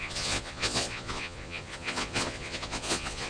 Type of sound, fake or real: fake